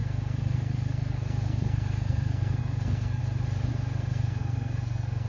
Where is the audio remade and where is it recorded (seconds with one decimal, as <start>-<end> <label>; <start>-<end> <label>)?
0.0-3.2 remade; 3.2-3.7 recorded; 3.7-5.3 remade